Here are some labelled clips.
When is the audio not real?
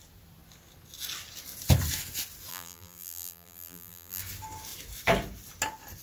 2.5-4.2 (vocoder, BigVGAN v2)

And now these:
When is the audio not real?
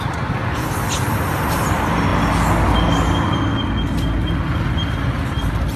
0.0-0.4 (vocoder, BigVGAN v2); 1.0-2.1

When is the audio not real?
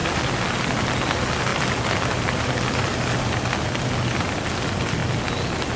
none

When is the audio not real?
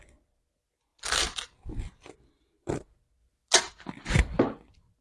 0.9-2.1 (vocoder, BigVGAN v2)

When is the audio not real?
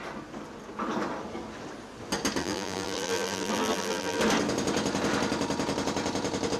2.4-4.2 (vocoder, BigVGAN v2)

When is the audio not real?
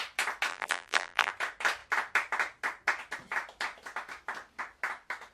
0.5-1.3 (vocoder, BigVGAN v2)